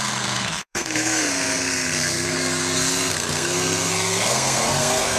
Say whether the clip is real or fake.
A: fake